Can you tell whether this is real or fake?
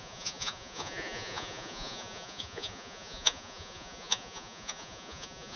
fake